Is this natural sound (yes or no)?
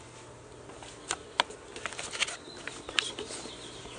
yes